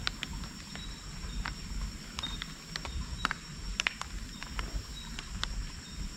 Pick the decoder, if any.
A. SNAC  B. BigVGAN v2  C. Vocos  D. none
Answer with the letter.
D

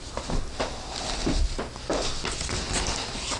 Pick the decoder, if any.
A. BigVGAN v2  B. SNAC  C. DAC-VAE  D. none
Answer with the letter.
D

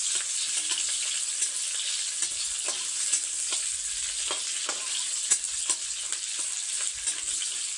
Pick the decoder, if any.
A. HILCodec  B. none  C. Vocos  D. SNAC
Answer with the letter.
B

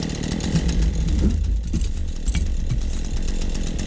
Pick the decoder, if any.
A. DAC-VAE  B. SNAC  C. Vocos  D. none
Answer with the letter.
D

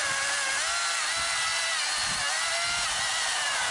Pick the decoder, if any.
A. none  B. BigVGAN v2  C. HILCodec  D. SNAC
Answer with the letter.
A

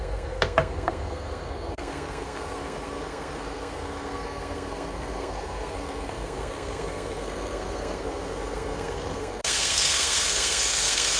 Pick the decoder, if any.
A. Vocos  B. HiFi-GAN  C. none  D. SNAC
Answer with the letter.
D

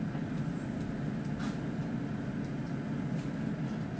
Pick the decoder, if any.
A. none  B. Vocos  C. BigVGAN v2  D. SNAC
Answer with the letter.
A